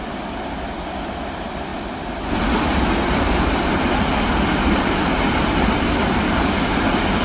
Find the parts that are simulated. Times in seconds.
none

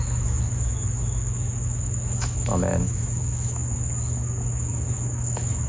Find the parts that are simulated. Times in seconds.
0.0-5.7 (autoencoder, DAC-VAE)

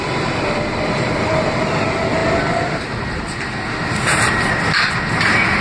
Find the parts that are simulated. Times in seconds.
none